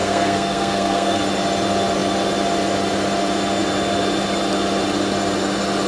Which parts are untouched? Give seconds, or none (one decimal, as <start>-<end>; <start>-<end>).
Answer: 1.2-5.9